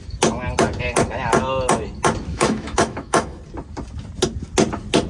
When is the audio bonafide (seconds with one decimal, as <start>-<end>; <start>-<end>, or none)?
0.0-2.3; 3.4-5.1